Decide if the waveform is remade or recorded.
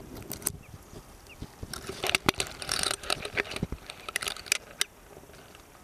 recorded